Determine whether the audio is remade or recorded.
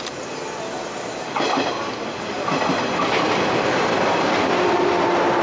recorded